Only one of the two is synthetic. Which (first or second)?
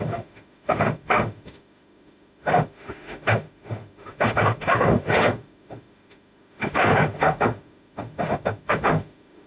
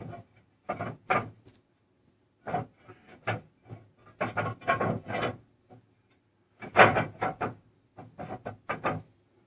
first